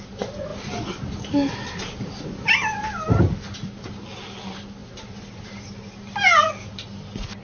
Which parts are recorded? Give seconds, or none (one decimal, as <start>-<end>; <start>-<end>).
0.0-7.4